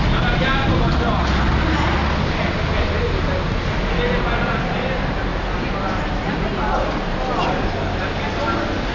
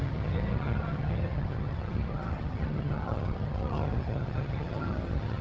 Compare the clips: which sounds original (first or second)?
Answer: first